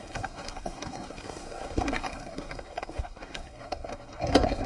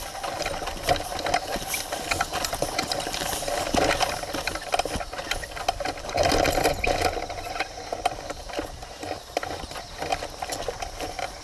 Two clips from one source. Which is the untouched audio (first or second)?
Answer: second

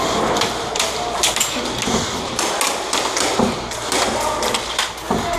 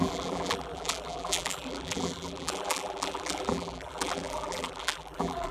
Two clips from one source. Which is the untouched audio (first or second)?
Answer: first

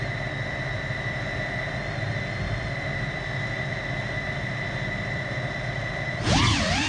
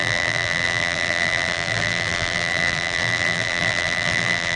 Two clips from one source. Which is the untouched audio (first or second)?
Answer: first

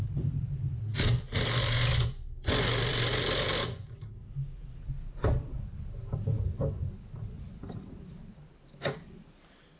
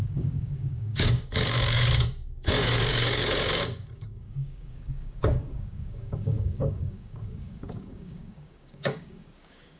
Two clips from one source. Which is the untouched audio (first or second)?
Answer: first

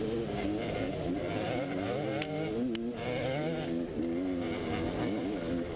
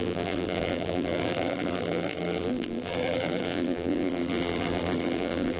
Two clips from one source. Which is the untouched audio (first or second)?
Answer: first